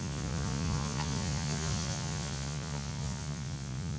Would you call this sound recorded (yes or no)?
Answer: no